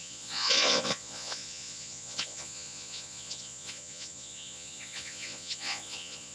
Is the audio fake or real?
fake